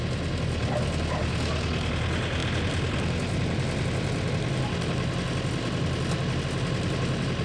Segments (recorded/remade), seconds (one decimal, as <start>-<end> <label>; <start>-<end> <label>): 0.0-7.4 recorded